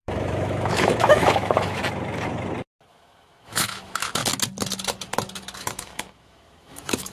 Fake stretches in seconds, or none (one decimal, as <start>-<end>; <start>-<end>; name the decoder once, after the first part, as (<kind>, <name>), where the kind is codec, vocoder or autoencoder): 0.0-1.8 (autoencoder, DAC-VAE); 2.9-4.2; 5.6-7.1